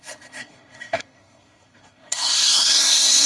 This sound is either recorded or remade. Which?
remade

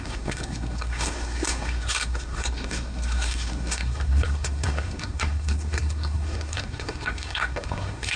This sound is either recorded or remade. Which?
remade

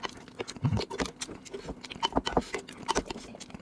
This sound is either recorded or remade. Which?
recorded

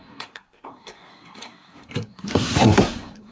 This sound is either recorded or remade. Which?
remade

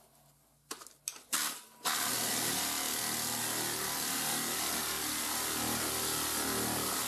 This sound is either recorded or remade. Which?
recorded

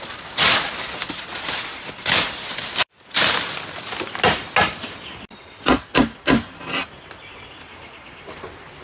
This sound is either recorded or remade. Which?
recorded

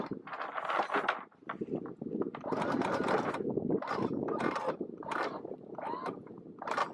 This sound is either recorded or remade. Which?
recorded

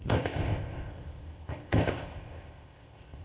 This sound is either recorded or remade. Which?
remade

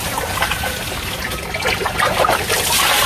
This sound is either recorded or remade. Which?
recorded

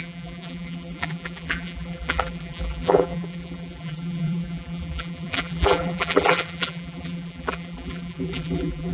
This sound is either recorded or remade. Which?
remade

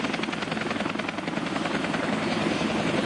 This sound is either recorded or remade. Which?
recorded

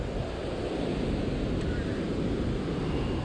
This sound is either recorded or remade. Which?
recorded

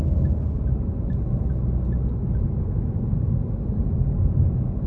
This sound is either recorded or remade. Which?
recorded